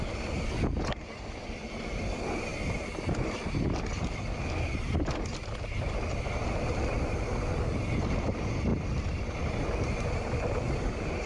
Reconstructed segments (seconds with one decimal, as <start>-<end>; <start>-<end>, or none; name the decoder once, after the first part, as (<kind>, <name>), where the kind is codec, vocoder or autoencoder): none